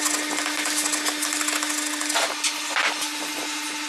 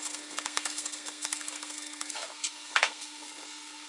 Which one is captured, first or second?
first